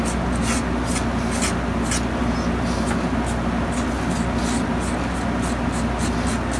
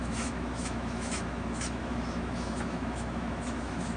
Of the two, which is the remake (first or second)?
second